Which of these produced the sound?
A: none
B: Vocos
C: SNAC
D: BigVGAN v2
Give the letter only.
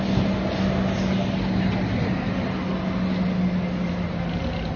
A